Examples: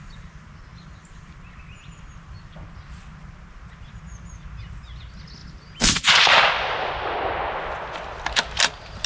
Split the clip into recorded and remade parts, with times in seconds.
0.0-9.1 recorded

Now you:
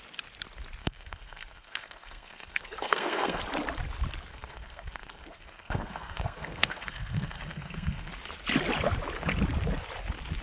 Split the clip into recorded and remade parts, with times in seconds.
0.0-0.8 recorded; 0.8-3.4 remade; 3.4-4.3 recorded; 4.3-8.1 remade; 8.1-10.4 recorded

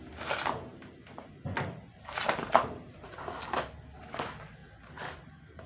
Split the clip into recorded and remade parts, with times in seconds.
0.0-5.7 recorded

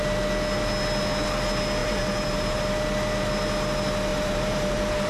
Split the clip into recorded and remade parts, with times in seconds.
0.0-1.8 recorded; 1.8-2.6 remade; 2.6-4.1 recorded; 4.1-5.1 remade

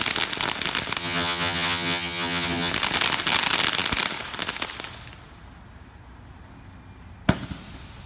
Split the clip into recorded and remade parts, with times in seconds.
0.0-1.0 recorded; 1.0-2.7 remade; 2.7-8.1 recorded

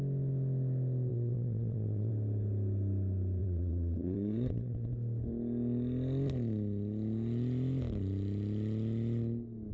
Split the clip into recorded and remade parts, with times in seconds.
0.0-1.1 recorded; 1.1-2.1 remade; 2.1-3.4 recorded; 3.4-4.9 remade; 4.9-9.7 recorded

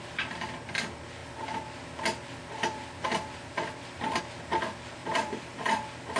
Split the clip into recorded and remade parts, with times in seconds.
0.0-5.0 recorded; 5.0-5.8 remade; 5.8-6.2 recorded

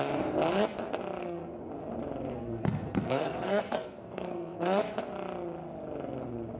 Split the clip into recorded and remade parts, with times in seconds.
0.0-1.2 recorded; 1.2-1.7 remade; 1.7-2.3 recorded; 2.3-4.8 remade; 4.8-6.6 recorded